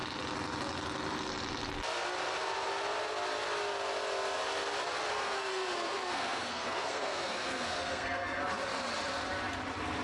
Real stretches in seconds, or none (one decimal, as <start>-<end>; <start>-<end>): 0.0-5.1; 8.4-10.0